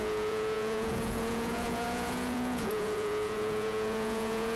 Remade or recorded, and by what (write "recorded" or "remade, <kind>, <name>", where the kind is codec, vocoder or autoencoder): remade, vocoder, Vocos